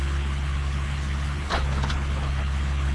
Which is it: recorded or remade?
remade